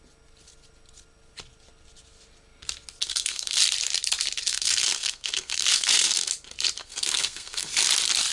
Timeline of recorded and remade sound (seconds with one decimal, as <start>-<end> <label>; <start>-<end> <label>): 0.0-3.1 recorded; 3.1-3.6 remade; 3.6-4.5 recorded; 4.5-6.3 remade; 6.3-6.8 recorded; 6.8-7.7 remade; 7.7-8.3 recorded